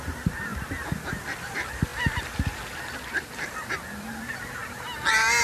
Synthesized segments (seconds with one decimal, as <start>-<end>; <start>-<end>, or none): none